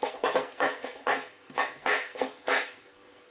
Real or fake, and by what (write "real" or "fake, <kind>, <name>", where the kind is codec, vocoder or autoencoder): fake, codec, SNAC